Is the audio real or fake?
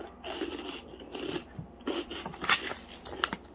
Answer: real